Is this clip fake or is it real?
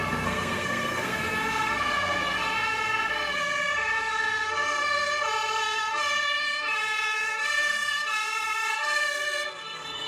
fake